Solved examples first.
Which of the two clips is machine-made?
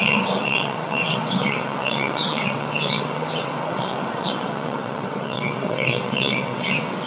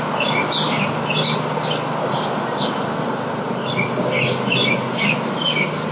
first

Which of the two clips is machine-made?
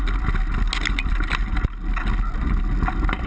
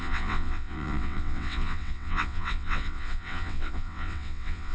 second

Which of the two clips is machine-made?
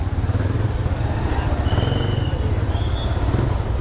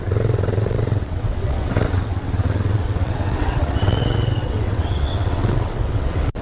second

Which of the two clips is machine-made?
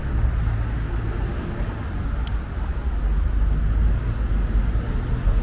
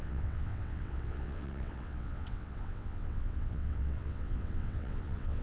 second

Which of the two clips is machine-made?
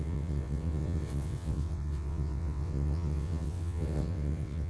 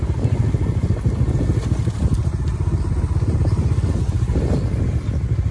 first